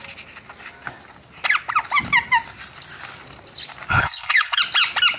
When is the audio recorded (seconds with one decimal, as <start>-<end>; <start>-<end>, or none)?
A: 0.0-3.9; 4.6-5.2